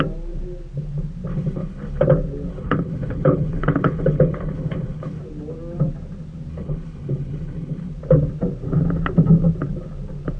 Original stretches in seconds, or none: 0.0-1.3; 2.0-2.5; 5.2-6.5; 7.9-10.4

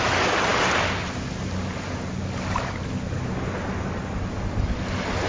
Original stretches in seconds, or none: 0.0-5.3

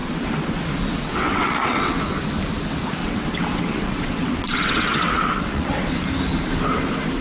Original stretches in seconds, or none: 0.6-1.0; 2.0-3.0; 5.9-7.2

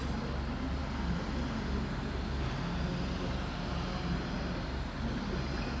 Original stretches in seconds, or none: 0.0-5.8

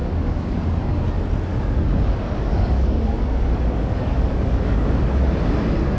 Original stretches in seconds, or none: 1.0-1.5; 5.1-6.0

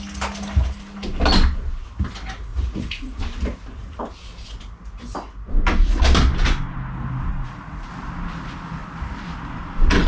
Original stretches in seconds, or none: 0.0-2.5; 3.2-7.3; 7.9-10.1